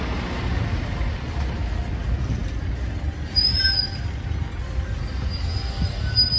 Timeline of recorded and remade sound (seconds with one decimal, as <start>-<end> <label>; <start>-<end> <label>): 0.0-6.4 recorded